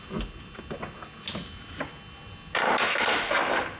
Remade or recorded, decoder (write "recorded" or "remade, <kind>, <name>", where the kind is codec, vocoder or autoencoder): recorded